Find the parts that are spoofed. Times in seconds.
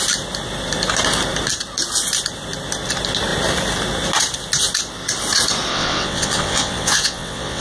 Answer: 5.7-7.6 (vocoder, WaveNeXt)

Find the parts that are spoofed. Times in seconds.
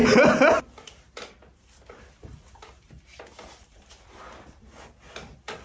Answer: none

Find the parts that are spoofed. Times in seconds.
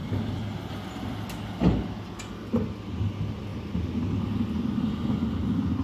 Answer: none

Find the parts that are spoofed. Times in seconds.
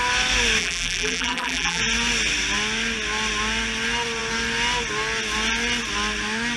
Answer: 0.6-1.8 (vocoder, BigVGAN v2)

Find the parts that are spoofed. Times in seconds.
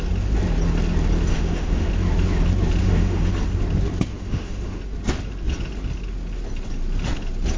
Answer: 1.3-1.9 (autoencoder, DAC-VAE); 2.8-3.3; 4.1-4.8